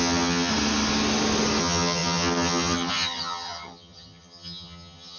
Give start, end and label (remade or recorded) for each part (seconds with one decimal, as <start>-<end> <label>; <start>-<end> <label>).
0.0-0.5 remade; 0.5-1.6 recorded; 1.6-5.2 remade